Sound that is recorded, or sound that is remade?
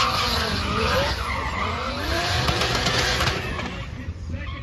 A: remade